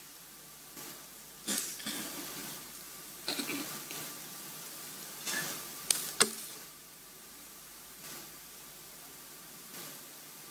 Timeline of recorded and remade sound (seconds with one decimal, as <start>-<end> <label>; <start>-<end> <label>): 0.0-2.4 recorded; 2.4-3.4 remade; 3.4-6.5 recorded; 6.5-8.0 remade; 8.0-10.5 recorded